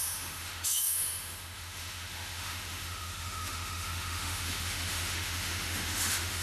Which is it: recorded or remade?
remade